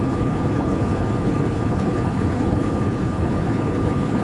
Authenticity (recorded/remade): remade